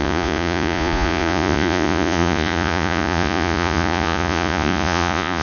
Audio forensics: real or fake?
fake